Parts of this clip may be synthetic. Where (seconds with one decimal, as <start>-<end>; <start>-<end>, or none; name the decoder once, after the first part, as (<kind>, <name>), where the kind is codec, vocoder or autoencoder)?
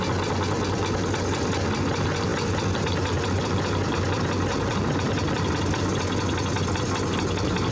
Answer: none